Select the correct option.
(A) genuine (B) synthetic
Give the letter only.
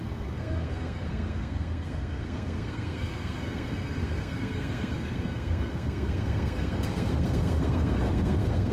B